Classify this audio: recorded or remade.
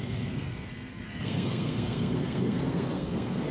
remade